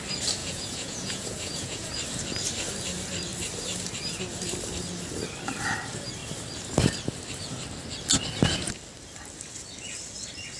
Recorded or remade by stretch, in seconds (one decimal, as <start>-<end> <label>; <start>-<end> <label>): 0.0-0.4 recorded; 0.4-1.9 remade; 1.9-10.6 recorded